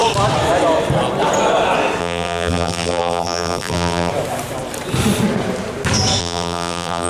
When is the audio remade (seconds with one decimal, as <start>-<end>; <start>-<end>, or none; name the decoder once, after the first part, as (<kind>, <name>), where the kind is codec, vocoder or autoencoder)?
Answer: 2.0-4.1 (vocoder, BigVGAN v2); 6.2-7.1